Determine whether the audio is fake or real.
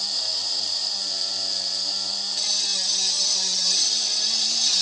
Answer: real